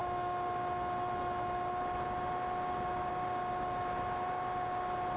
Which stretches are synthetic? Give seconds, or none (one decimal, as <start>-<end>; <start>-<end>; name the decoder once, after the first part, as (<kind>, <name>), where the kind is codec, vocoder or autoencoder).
none